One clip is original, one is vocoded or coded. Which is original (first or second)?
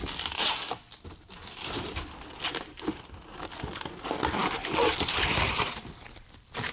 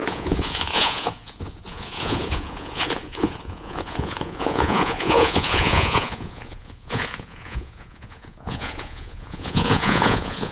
first